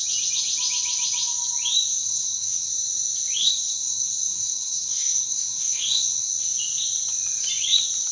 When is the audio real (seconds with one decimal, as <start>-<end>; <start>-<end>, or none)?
0.0-1.9; 2.7-3.4; 6.3-8.1